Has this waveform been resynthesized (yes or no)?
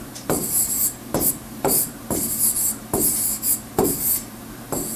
yes